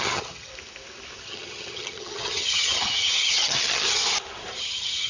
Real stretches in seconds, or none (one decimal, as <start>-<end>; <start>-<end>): 0.5-1.2; 4.0-4.6